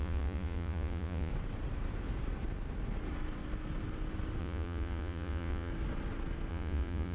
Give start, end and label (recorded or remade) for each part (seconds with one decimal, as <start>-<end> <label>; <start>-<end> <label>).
0.0-1.3 remade; 1.3-4.4 recorded; 4.4-5.7 remade; 5.7-6.5 recorded; 6.5-7.1 remade